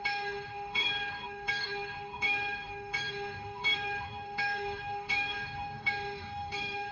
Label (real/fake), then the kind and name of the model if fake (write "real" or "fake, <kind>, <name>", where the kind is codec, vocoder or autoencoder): fake, autoencoder, DAC-VAE